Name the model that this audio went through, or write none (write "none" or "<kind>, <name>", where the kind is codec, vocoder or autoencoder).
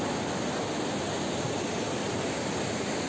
none